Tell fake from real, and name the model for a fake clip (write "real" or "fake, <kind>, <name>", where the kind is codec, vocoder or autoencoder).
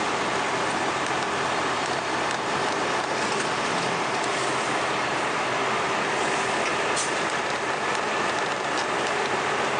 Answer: real